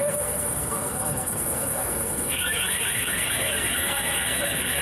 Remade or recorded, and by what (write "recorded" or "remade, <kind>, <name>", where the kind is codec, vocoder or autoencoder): remade, codec, SNAC